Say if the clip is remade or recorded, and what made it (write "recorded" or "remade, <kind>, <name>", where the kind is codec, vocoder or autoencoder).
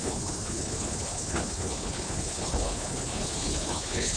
remade, codec, HILCodec